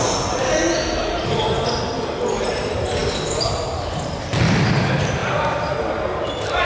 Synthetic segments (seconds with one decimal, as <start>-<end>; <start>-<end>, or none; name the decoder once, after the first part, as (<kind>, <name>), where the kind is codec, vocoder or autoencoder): none